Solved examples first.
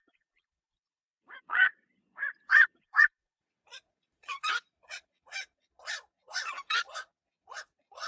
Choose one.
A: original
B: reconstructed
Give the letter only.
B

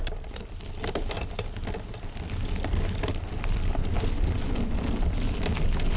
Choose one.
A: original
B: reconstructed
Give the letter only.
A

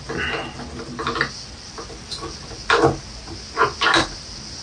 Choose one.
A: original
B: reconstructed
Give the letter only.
A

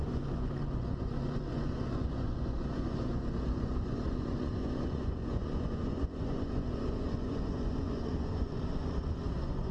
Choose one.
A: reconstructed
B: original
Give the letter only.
A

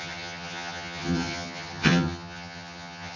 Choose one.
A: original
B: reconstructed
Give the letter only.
B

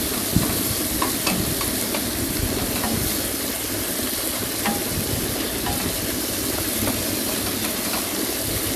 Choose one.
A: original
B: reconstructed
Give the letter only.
A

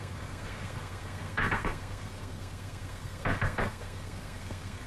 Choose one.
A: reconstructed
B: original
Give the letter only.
A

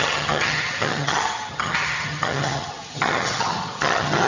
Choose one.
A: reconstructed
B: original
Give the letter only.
A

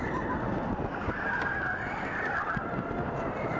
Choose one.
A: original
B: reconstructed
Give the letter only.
A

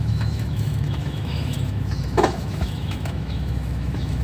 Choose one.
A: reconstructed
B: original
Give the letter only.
A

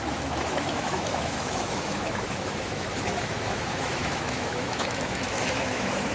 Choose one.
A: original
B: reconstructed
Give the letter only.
B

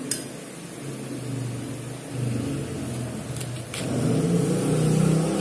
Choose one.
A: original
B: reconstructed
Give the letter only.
A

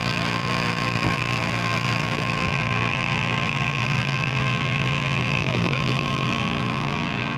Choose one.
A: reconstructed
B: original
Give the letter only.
A